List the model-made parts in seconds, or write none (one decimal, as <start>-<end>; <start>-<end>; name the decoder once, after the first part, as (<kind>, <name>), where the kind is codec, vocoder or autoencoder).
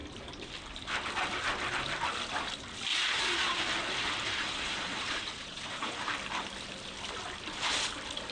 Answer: 2.9-3.6 (vocoder, Vocos); 4.4-6.1